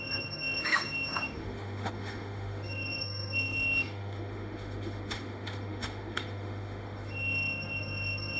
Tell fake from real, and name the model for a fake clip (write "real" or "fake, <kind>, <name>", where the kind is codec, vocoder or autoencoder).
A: fake, autoencoder, DAC-VAE